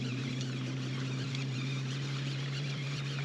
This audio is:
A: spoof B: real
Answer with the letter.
A